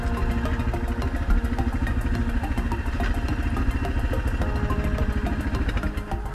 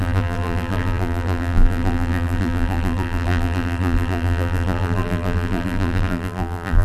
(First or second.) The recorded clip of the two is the first